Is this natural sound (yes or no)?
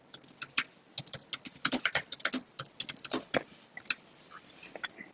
yes